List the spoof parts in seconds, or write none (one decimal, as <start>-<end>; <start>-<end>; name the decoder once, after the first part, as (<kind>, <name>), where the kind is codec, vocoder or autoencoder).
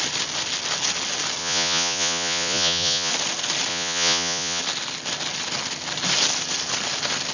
1.4-3.1 (vocoder, Vocos); 3.7-4.6